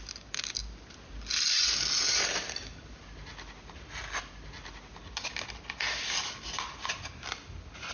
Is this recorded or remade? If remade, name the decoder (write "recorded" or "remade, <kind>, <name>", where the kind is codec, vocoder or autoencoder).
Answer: recorded